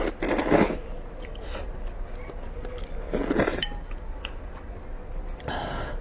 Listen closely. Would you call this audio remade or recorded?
recorded